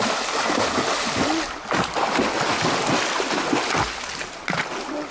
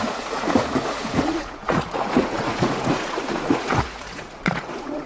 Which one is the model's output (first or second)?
second